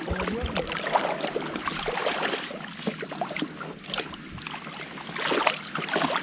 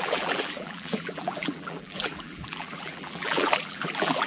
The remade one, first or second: second